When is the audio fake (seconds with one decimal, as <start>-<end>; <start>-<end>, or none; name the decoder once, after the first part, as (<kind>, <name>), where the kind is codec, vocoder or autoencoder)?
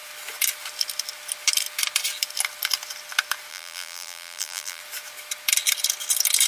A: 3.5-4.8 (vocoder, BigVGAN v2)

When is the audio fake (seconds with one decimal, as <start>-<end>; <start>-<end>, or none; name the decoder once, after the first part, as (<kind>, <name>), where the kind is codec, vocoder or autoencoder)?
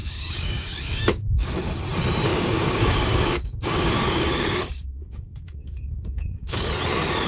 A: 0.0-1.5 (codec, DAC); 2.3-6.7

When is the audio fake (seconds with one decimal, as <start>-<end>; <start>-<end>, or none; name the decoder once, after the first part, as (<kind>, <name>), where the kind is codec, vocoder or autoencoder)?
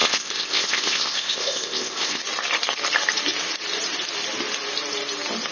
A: 0.0-2.2 (codec, ZipCodec)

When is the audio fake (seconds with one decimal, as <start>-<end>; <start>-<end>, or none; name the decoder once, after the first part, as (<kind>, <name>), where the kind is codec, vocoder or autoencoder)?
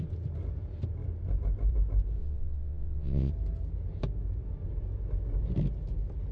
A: 2.2-3.3 (vocoder, WaveNeXt)